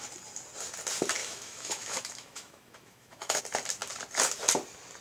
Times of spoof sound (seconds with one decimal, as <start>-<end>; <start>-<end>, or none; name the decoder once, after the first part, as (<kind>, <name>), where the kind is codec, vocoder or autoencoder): 1.2-3.4 (autoencoder, DAC-VAE)